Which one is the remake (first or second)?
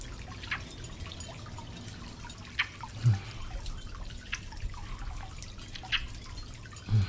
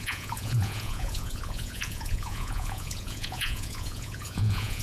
second